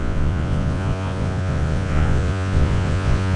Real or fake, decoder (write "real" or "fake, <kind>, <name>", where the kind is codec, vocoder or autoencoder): fake, vocoder, Vocos